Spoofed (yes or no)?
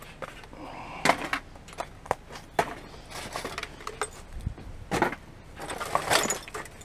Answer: no